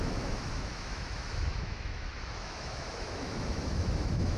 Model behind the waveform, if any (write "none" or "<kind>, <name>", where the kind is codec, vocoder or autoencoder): autoencoder, DAC-VAE